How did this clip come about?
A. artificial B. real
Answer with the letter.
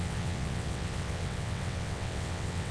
A